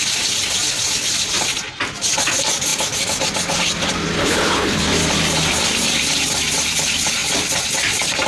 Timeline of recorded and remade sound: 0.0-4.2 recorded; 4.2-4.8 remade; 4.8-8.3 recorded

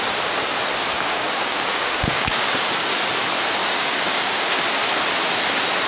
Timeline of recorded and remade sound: 0.0-0.9 recorded; 0.9-2.7 remade; 2.7-3.6 recorded; 3.6-4.6 remade; 4.6-5.9 recorded